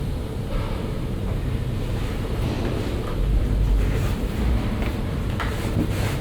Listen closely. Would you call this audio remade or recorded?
remade